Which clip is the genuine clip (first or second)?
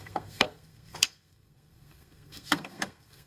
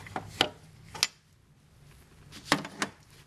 second